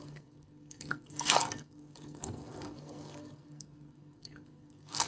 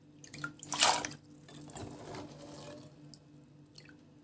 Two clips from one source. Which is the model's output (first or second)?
first